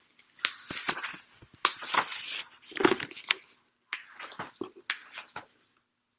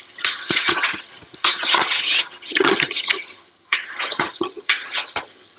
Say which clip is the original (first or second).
first